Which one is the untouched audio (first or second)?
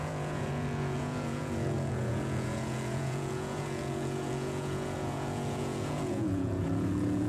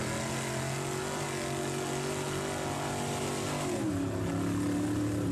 second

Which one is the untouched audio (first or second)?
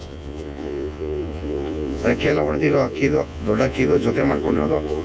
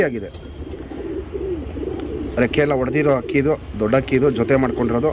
second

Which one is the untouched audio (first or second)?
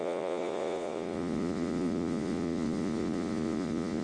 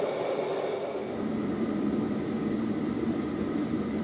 second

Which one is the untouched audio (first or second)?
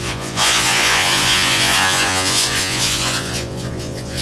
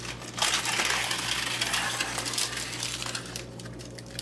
second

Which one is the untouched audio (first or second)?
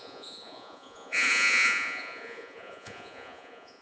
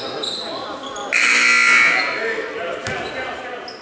second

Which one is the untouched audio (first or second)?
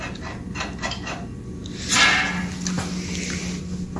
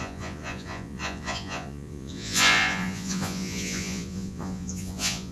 first